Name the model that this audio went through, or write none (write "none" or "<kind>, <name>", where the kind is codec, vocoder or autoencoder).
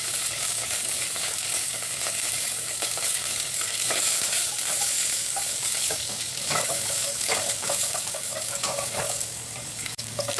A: codec, DAC